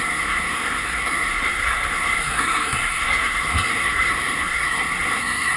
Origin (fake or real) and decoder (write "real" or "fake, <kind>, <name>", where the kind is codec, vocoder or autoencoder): fake, codec, SNAC